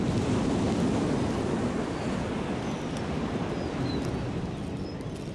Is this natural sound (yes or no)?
yes